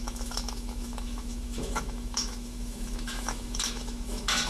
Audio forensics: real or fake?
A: fake